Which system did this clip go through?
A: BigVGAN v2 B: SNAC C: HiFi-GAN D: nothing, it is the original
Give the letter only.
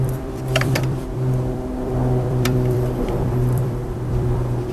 A